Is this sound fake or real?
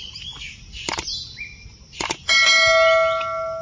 real